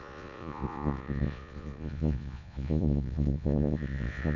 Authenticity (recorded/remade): remade